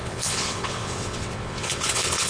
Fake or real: fake